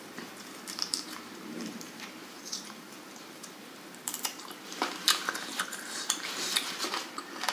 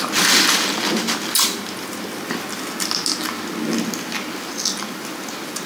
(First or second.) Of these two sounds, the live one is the second